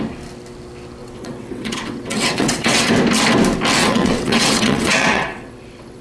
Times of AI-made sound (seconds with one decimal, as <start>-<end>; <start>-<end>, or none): 1.0-2.9; 3.8-6.0